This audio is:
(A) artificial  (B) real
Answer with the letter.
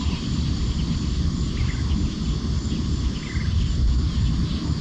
B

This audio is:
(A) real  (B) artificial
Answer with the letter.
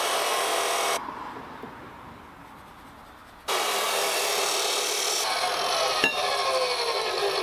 A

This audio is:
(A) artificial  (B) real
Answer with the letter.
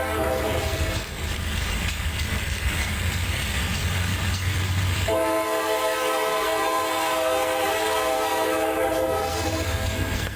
A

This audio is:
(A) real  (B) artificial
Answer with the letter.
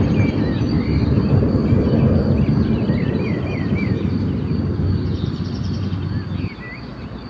A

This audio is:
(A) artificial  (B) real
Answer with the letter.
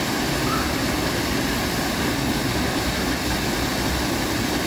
B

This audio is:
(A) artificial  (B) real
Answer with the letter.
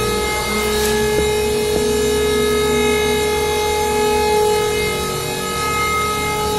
B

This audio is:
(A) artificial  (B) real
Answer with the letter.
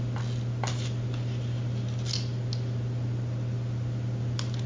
B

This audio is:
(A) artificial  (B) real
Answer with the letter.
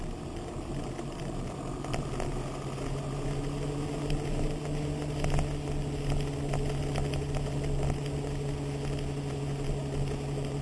B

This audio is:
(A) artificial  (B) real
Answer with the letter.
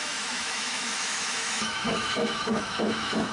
A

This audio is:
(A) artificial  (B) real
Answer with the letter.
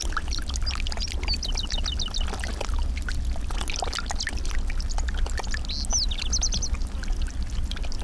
B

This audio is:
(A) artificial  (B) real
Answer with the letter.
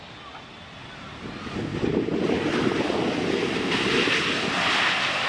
B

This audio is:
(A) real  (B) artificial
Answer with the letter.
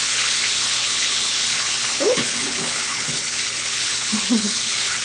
B